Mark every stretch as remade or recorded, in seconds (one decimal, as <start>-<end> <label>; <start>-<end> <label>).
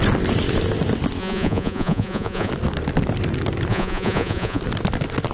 0.0-1.2 recorded; 1.2-2.5 remade; 2.5-3.7 recorded; 3.7-4.6 remade; 4.6-5.3 recorded